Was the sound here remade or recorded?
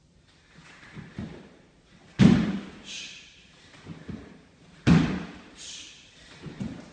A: remade